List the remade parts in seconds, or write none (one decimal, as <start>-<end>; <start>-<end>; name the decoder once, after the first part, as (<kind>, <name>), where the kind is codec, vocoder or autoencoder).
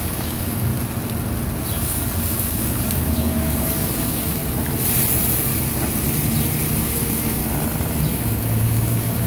0.0-0.7 (codec, DAC); 1.8-4.4; 6.8-7.4; 8.1-9.3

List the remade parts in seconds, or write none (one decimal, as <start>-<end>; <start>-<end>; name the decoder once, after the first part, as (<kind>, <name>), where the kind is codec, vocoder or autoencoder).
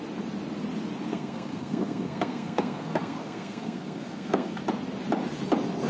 1.1-4.6 (codec, SNAC)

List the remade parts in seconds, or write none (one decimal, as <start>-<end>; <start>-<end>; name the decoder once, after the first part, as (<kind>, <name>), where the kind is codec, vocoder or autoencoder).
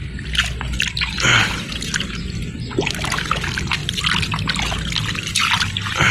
none